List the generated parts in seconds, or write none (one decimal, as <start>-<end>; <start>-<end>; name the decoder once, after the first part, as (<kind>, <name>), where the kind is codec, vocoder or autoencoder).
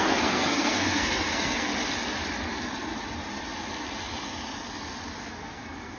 0.0-1.7 (codec, SNAC); 5.3-6.0